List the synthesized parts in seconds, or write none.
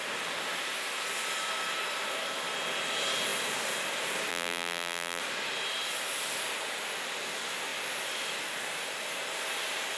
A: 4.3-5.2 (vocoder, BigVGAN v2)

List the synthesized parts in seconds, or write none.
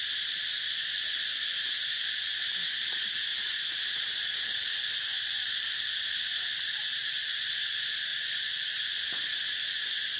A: 3.3-5.1 (vocoder, BigVGAN v2); 6.9-7.5; 8.1-9.2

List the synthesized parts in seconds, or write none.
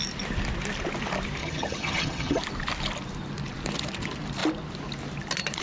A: 1.4-2.4 (vocoder, HiFi-GAN)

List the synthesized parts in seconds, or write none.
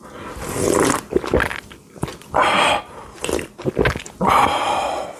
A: none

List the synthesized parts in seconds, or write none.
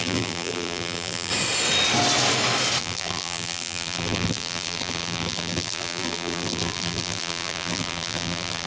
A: 0.0-1.3 (vocoder, BigVGAN v2); 2.8-8.7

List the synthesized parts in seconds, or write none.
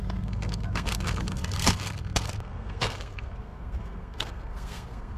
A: 0.0-5.2 (codec, SNAC)